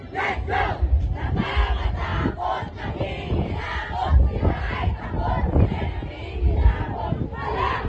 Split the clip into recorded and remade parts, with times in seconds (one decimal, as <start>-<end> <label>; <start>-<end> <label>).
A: 0.0-7.9 recorded

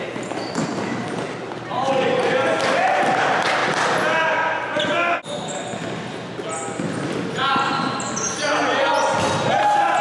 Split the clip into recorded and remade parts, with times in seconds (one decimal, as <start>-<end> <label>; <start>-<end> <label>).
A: 0.0-10.0 recorded

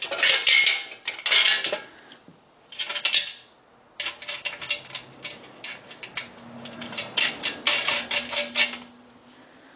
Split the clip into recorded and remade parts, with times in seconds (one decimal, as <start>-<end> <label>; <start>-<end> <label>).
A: 0.0-9.8 recorded

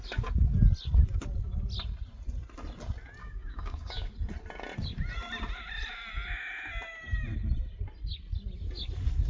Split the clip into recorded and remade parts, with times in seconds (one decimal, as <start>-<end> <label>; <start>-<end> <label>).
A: 0.0-3.2 recorded; 3.2-4.1 remade; 4.1-9.3 recorded